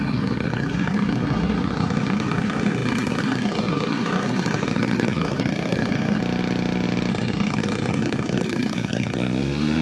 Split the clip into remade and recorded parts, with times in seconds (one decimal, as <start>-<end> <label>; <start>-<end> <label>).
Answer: 0.0-6.2 remade; 6.2-7.1 recorded; 7.1-9.8 remade